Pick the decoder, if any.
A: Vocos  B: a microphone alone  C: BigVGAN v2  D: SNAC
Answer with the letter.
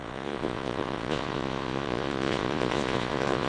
A